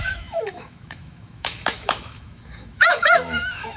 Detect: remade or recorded remade